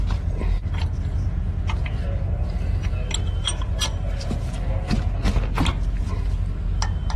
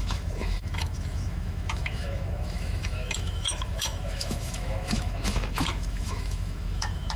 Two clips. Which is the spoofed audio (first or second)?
second